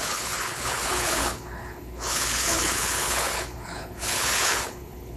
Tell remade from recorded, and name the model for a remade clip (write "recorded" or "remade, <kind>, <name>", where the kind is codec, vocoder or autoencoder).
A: remade, codec, HILCodec